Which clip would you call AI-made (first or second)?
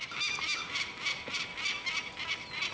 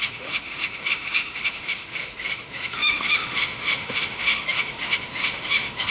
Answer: second